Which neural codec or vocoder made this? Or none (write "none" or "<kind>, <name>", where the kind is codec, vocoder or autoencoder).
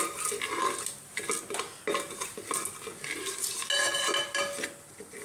none